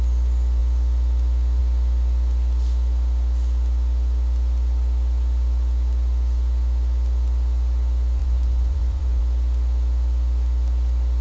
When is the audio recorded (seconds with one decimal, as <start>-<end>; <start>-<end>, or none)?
0.0-8.2; 9.2-11.2